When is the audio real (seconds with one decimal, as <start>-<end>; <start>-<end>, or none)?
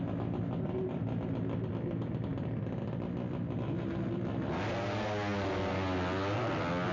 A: 0.0-6.9